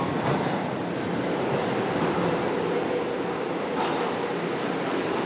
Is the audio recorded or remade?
recorded